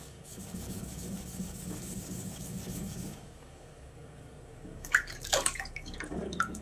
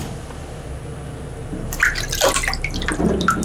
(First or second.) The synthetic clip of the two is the first